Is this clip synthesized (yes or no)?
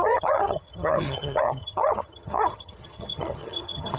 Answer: yes